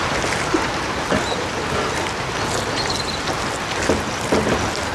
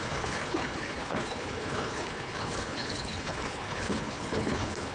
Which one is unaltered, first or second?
first